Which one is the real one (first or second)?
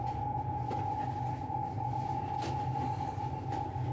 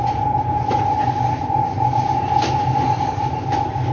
first